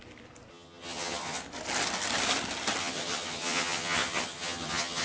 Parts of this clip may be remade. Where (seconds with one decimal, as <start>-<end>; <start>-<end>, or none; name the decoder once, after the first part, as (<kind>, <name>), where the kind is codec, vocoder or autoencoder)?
0.5-1.4 (vocoder, HiFi-GAN); 2.8-5.0